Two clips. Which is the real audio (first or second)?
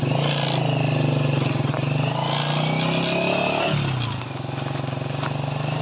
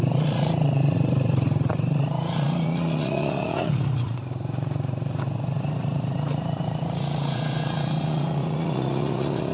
first